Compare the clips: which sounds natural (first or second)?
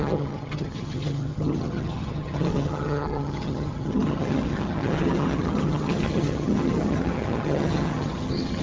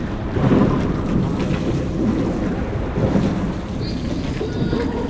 second